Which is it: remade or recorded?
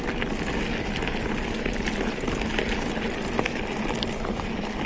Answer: recorded